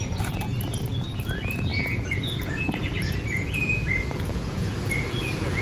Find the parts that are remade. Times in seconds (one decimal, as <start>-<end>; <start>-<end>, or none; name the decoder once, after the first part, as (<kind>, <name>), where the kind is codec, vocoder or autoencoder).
0.0-5.6 (vocoder, Vocos)